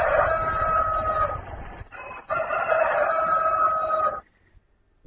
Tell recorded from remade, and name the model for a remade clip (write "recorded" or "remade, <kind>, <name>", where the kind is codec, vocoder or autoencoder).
recorded